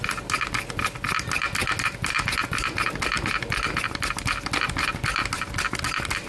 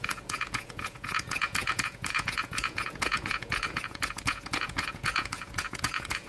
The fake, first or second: second